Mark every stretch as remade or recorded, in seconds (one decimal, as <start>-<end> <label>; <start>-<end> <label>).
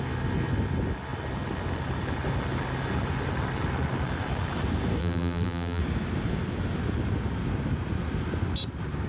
0.0-5.0 recorded; 5.0-5.8 remade; 5.8-9.1 recorded